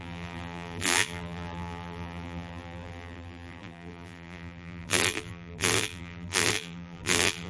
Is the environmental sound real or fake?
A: fake